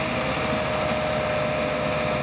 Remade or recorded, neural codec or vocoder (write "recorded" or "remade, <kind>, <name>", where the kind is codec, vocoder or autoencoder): recorded